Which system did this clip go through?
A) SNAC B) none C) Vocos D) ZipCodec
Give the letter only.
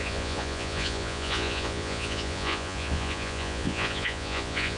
C